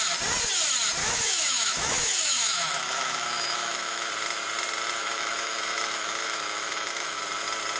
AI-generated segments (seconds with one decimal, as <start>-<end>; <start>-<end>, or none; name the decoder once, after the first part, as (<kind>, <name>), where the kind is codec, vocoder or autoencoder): 1.0-4.1 (autoencoder, DAC-VAE); 5.0-7.2